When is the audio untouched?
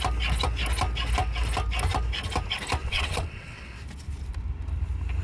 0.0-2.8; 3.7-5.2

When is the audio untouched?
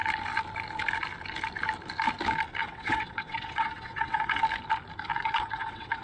0.0-2.6; 4.4-5.1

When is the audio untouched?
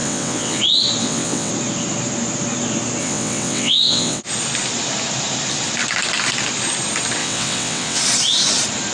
0.6-1.0; 1.5-3.0; 4.2-7.2; 8.0-8.9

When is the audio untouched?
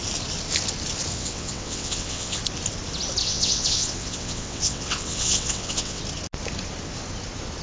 0.0-1.1; 2.4-3.2; 6.0-7.6